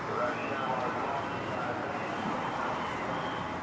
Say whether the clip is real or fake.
real